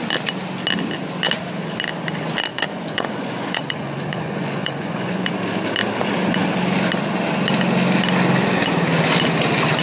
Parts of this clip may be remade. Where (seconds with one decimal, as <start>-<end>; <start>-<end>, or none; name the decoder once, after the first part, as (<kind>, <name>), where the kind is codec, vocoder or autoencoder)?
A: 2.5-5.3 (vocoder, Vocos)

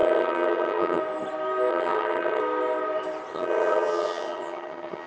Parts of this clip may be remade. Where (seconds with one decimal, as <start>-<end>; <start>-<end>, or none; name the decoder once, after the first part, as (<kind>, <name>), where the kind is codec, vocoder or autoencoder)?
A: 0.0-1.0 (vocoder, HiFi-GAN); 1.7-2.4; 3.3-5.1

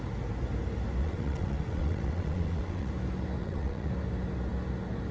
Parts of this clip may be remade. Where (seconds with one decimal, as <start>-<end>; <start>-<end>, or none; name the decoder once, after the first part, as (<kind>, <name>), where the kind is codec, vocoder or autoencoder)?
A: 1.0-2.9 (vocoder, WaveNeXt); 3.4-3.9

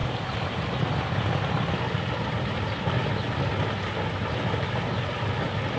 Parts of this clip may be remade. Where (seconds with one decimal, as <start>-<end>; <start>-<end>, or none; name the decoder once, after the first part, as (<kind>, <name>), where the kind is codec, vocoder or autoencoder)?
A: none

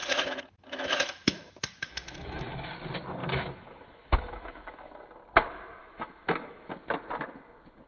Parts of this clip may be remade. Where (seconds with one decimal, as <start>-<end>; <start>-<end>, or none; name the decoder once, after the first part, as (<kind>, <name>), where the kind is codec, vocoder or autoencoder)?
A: 0.0-2.7 (autoencoder, DAC-VAE); 3.2-4.9; 5.8-6.7

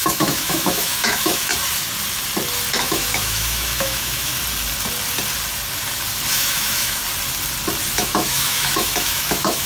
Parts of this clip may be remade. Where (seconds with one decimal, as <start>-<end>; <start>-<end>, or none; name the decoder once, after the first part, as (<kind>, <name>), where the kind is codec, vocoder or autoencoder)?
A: 0.0-1.5 (autoencoder, DAC-VAE); 2.7-4.3; 6.3-7.0; 7.9-9.7